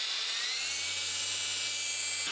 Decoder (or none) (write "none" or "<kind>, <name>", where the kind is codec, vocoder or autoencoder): vocoder, BigVGAN v2